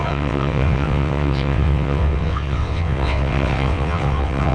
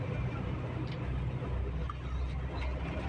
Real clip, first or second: second